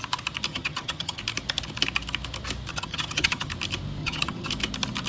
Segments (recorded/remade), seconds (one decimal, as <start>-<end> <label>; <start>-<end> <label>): 0.0-0.5 recorded; 0.5-1.2 remade; 1.2-2.7 recorded; 2.7-3.5 remade; 3.5-4.0 recorded; 4.0-4.5 remade; 4.5-5.1 recorded